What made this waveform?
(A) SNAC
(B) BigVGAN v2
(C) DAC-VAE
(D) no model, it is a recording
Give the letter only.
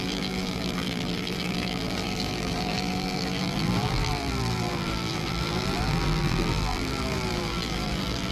B